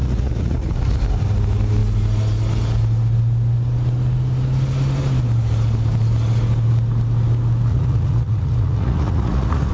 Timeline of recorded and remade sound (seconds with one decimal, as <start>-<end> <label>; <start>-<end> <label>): 0.0-0.7 remade; 0.7-7.7 recorded; 7.7-9.7 remade